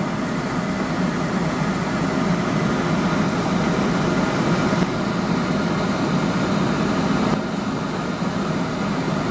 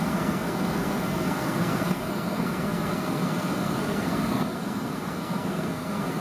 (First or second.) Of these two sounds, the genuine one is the first